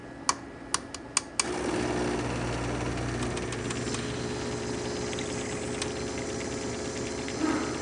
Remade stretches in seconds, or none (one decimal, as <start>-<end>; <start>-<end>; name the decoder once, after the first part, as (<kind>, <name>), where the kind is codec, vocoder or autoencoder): none

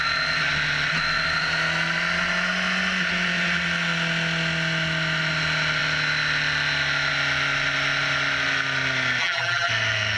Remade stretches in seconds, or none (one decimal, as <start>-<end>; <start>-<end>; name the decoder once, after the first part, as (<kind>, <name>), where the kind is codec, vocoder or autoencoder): 9.2-9.7 (vocoder, BigVGAN v2)

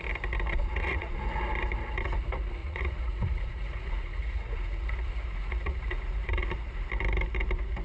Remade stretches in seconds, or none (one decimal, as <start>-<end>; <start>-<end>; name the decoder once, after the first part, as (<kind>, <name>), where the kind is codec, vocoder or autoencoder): 0.7-1.4 (vocoder, Vocos); 2.6-6.4

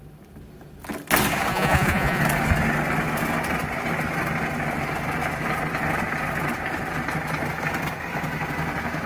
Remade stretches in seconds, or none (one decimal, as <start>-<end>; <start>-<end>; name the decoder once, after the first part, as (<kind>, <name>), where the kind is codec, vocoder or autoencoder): 1.5-2.2 (vocoder, Vocos)

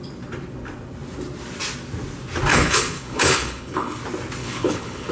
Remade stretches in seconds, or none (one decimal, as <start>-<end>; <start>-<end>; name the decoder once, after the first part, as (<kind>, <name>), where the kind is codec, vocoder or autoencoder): 2.5-4.0 (codec, HILCodec); 4.4-5.1

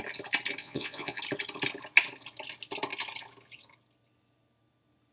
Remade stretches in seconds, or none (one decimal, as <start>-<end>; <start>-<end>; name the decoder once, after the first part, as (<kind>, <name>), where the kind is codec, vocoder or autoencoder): 0.6-1.2 (vocoder, Vocos)

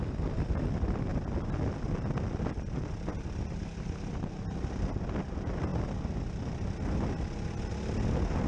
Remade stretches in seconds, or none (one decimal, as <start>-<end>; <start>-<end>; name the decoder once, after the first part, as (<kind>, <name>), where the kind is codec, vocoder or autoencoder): none

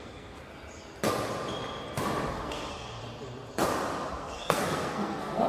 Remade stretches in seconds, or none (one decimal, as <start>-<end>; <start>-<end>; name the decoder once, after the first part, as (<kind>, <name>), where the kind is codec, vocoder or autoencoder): 0.0-0.5 (codec, SNAC); 2.3-3.0; 4.1-5.5